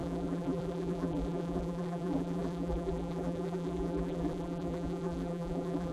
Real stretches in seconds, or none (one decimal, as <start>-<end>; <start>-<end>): none